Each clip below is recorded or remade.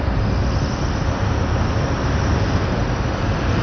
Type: recorded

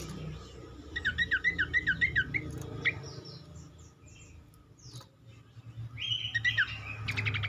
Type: recorded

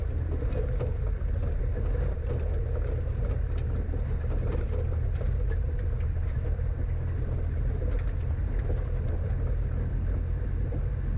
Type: recorded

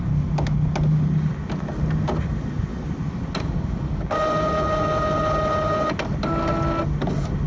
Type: recorded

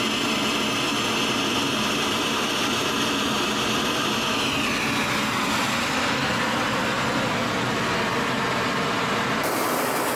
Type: recorded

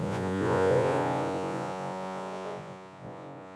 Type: remade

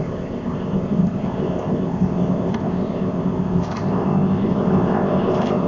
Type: remade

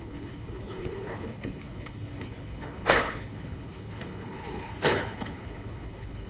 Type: remade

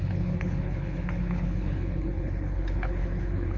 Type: remade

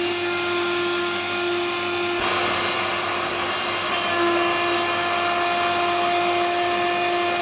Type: recorded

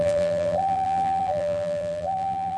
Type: remade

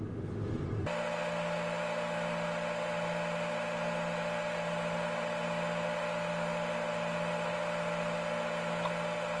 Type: recorded